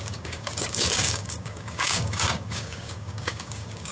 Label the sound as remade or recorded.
remade